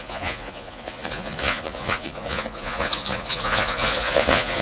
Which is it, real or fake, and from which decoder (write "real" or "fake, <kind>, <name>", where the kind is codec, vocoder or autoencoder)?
fake, vocoder, Vocos